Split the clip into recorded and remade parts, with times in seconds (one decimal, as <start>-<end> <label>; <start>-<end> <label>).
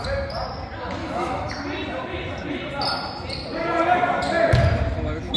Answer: 0.0-1.0 recorded; 1.0-1.5 remade; 1.5-5.4 recorded